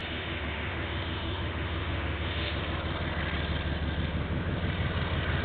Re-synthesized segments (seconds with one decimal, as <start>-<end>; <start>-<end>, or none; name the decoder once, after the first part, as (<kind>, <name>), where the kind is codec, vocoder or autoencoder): 0.0-2.6 (autoencoder, DAC-VAE)